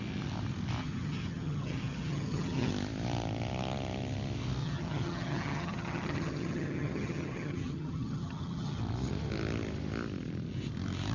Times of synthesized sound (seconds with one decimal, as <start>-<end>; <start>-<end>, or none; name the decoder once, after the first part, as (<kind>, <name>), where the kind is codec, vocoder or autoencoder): 0.8-2.7 (vocoder, HiFi-GAN); 4.6-8.8